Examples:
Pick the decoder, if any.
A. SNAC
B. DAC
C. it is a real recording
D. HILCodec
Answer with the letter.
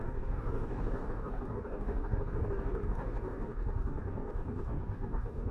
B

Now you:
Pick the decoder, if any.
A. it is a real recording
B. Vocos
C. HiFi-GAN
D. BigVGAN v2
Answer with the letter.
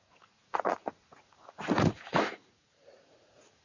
B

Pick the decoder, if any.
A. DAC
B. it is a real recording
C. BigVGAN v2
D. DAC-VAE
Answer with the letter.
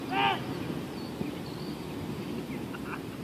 B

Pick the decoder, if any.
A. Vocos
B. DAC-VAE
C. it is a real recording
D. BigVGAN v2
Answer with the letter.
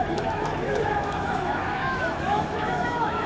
B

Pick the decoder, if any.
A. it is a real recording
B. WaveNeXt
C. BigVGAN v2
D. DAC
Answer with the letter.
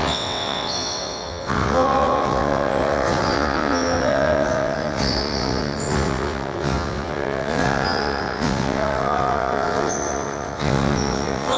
B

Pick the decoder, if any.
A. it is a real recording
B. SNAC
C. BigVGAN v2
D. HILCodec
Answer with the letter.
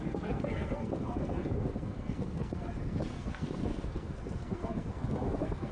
B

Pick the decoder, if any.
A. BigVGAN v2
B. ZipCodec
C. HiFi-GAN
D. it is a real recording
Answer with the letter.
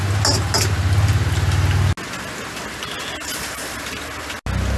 D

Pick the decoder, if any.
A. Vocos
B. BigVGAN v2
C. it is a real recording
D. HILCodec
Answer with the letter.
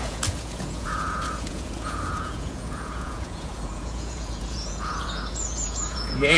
A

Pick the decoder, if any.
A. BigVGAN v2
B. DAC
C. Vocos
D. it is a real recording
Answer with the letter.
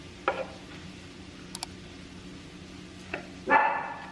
D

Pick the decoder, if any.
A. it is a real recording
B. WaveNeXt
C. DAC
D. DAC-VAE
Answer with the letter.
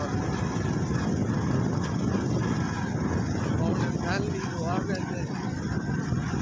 A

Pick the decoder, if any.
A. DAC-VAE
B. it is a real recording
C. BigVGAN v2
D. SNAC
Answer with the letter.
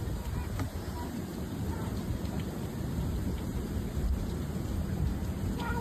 C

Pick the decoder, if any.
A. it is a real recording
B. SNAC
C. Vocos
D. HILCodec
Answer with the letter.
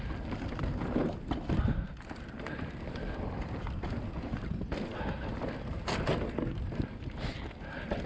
A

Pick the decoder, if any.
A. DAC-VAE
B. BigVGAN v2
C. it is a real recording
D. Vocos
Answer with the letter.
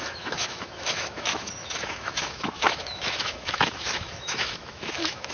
A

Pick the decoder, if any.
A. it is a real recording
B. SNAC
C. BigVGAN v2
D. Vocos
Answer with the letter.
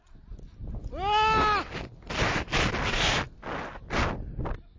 A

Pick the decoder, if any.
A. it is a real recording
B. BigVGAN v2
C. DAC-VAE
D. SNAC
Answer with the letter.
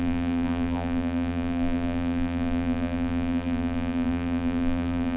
B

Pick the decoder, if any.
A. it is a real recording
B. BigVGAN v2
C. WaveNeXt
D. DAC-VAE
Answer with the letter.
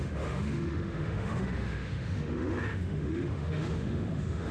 D